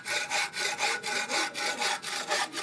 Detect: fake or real real